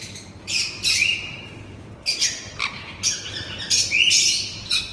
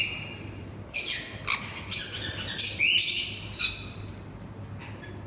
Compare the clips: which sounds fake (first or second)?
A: first